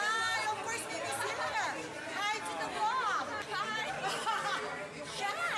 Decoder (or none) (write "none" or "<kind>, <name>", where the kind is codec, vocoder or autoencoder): none